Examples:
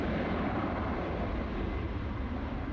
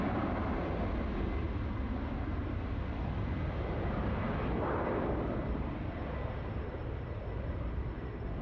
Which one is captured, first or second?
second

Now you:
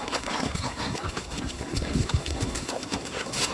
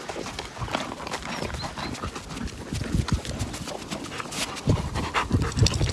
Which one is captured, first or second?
second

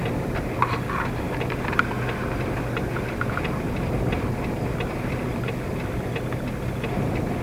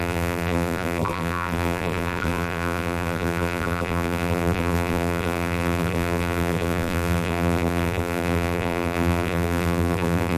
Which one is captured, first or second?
first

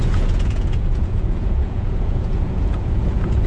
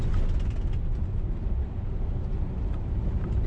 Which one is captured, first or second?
second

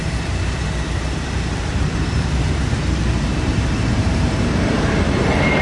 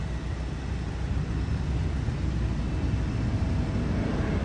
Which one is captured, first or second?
second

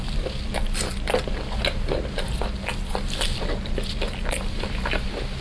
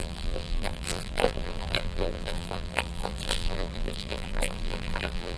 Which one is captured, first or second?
first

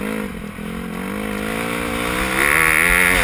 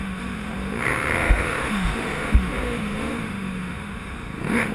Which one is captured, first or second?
first